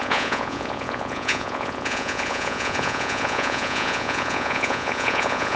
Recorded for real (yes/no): no